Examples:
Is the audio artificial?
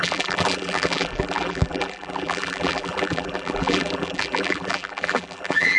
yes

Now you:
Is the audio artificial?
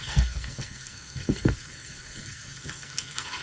yes